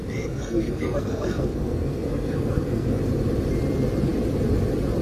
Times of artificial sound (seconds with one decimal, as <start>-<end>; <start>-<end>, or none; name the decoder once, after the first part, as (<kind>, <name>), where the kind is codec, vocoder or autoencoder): 0.0-3.0 (codec, SNAC)